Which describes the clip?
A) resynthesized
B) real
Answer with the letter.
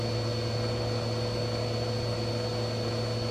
B